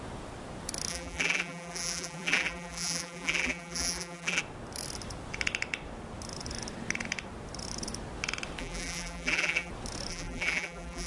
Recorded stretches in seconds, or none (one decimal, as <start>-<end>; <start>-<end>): 0.0-0.9; 4.4-8.6; 9.7-10.1